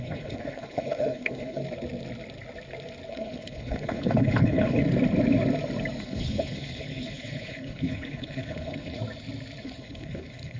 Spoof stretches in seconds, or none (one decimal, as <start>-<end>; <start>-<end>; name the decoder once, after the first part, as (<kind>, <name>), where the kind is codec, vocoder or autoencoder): 0.0-1.6 (codec, HILCodec); 3.1-4.8; 6.0-9.0; 9.6-10.6